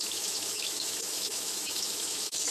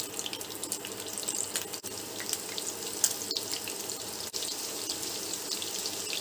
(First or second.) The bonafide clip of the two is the second